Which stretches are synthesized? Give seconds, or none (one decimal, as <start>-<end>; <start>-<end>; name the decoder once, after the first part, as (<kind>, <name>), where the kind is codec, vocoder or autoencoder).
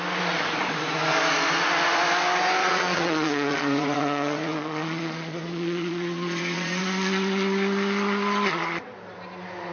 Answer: 2.6-6.8 (vocoder, Vocos)